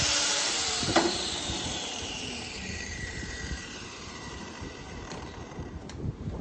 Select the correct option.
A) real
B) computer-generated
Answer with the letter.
B